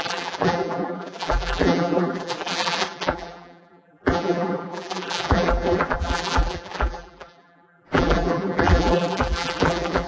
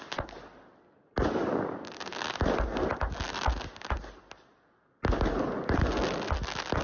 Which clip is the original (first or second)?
second